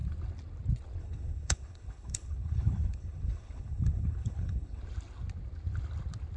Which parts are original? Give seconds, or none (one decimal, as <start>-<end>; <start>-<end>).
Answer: 0.0-1.0; 4.8-6.4

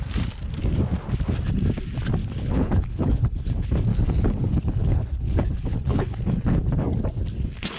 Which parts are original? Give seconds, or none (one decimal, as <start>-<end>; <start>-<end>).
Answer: 0.0-2.2; 3.5-3.9; 6.7-7.8